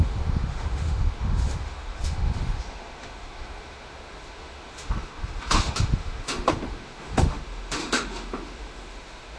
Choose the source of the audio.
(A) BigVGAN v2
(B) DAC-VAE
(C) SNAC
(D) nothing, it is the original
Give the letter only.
B